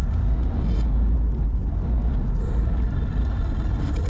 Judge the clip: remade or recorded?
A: recorded